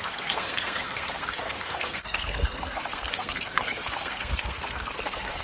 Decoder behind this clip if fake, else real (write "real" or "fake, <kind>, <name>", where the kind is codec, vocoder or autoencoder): fake, codec, SNAC